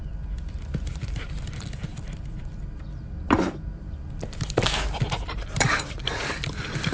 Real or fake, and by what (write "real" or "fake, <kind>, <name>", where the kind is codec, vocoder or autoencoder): fake, vocoder, BigVGAN v2